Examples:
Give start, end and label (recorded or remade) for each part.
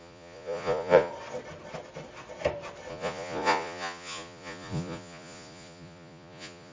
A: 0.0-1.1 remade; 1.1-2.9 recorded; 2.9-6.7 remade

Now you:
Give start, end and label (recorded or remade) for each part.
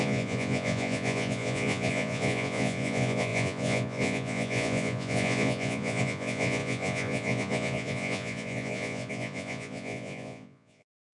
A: 0.0-11.1 remade